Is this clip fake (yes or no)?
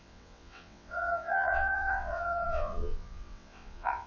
yes